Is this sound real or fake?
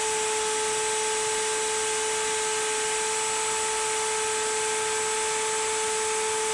real